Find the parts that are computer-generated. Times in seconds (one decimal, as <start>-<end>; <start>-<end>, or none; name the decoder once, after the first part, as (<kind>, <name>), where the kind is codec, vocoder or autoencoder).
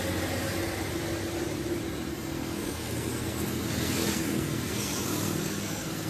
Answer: 2.1-6.1 (codec, SNAC)